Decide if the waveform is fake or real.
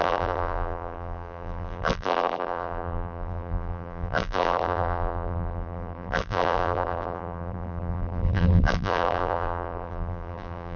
fake